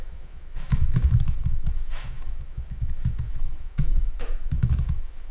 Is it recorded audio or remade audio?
remade